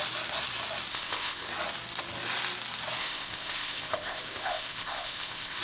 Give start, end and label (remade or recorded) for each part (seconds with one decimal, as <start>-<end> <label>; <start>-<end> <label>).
0.0-0.9 recorded; 0.9-1.5 remade; 1.5-3.0 recorded; 3.0-5.6 remade